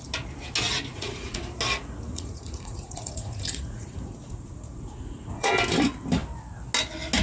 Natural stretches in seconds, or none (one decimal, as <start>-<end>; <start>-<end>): 0.0-0.9; 1.4-2.1; 5.5-7.2